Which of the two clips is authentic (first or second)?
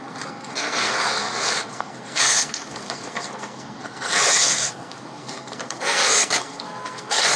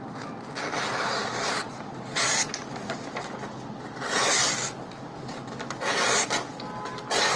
second